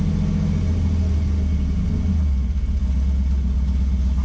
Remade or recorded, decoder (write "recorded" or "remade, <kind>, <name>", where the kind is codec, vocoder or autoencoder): recorded